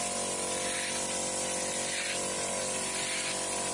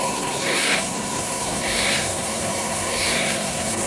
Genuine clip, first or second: first